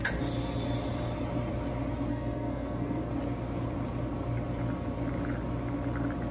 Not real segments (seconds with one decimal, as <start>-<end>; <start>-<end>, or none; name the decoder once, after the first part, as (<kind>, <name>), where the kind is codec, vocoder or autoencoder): 2.1-3.1 (codec, SNAC)